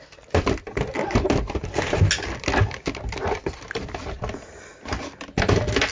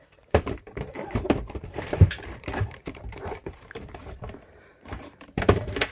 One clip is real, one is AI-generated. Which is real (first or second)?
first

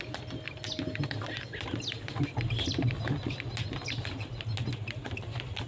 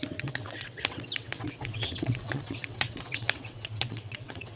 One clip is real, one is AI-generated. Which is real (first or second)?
first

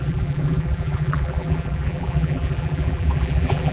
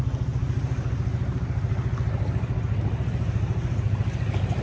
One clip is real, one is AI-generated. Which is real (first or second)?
second